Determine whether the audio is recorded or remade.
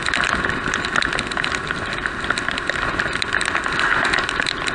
recorded